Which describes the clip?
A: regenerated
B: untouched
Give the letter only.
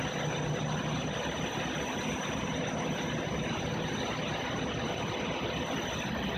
B